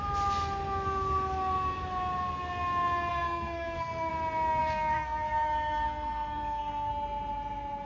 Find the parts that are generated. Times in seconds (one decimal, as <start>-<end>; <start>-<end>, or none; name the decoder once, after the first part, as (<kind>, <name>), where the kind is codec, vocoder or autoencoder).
3.1-4.1 (codec, SNAC); 4.6-6.9